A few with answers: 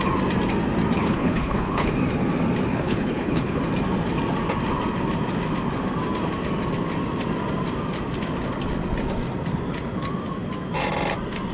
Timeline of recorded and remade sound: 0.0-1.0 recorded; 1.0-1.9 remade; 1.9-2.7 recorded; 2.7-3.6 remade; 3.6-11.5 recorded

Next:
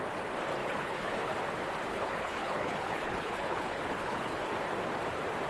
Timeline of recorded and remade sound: 0.0-0.6 recorded; 0.6-1.3 remade; 1.3-1.9 recorded; 1.9-4.5 remade; 4.5-5.5 recorded

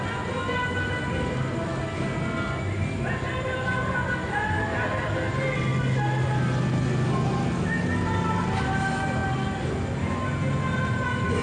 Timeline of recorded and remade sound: 0.0-11.4 recorded

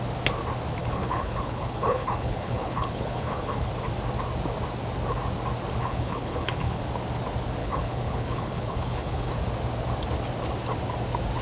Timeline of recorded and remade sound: 0.0-0.8 recorded; 0.8-3.7 remade; 3.7-5.8 recorded; 5.8-6.8 remade; 6.8-7.6 recorded; 7.6-9.3 remade; 9.3-11.4 recorded

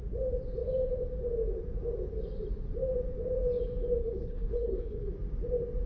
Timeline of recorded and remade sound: 0.0-4.0 recorded; 4.0-5.1 remade; 5.1-5.9 recorded

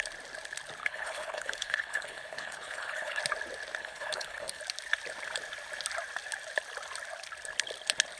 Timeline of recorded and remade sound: 0.0-0.8 recorded; 0.8-3.2 remade; 3.2-3.8 recorded; 3.8-4.6 remade; 4.6-8.2 recorded

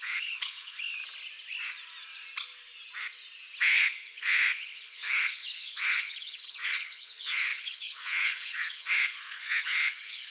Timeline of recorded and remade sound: 0.0-1.0 remade; 1.0-3.6 recorded; 3.6-10.3 remade

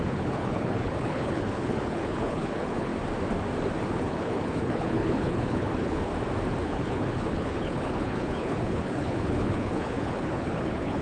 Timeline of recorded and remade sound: 0.0-2.9 remade; 2.9-3.9 recorded; 3.9-6.1 remade; 6.1-6.6 recorded; 6.6-11.0 remade